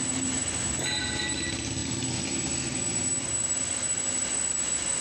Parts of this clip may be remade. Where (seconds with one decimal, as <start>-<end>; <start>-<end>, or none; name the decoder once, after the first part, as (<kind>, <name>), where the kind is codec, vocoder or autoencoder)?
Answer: none